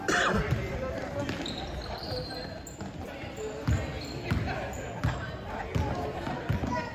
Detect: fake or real real